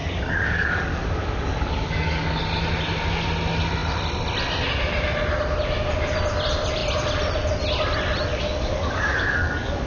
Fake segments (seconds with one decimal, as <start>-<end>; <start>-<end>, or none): 0.0-2.4; 8.3-9.9